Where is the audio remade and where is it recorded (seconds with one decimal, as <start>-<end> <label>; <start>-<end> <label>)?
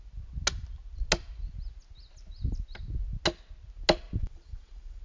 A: 0.0-4.2 recorded; 4.2-5.0 remade